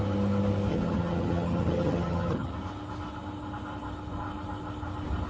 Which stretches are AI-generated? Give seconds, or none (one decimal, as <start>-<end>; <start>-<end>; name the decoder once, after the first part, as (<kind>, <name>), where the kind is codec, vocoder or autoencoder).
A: 0.7-2.5 (vocoder, HiFi-GAN)